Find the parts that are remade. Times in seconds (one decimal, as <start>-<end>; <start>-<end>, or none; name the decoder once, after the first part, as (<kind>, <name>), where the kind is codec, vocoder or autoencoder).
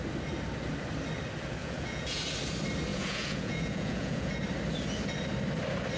1.6-2.2 (vocoder, Vocos); 2.9-4.4